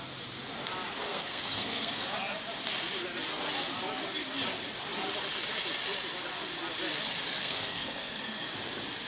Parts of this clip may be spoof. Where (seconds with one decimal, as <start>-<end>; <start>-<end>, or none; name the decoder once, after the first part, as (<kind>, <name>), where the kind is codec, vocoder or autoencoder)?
1.1-1.9 (codec, SNAC); 7.4-8.5